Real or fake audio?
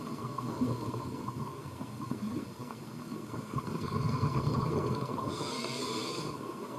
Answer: fake